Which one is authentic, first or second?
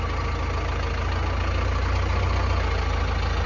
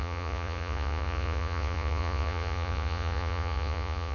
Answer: first